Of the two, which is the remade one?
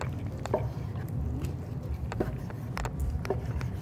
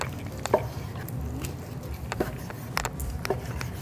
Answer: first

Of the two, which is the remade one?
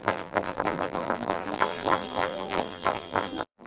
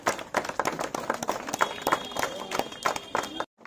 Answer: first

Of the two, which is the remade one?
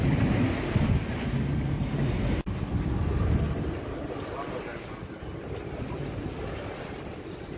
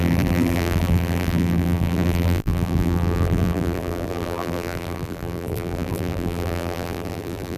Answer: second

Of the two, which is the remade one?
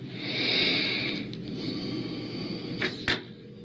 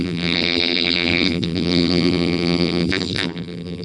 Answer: second